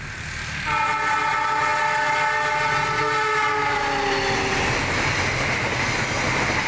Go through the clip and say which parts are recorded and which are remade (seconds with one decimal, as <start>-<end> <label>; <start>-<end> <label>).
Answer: 0.0-6.7 recorded